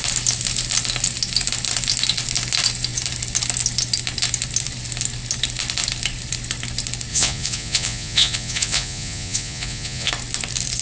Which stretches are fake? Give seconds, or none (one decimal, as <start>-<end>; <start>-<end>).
7.1-10.1